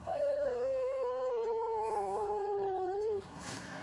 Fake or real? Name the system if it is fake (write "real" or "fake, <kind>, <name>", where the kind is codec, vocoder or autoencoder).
fake, codec, SNAC